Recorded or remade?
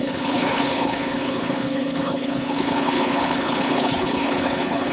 remade